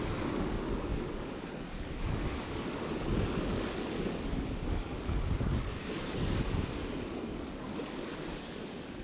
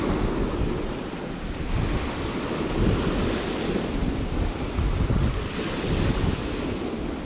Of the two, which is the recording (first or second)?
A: second